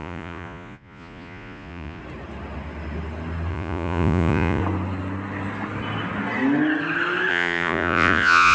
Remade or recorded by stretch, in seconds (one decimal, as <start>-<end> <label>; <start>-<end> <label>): 0.0-2.0 remade; 2.0-3.5 recorded; 3.5-4.6 remade; 4.6-7.3 recorded; 7.3-8.5 remade